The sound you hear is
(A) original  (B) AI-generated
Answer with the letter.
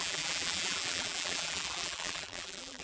B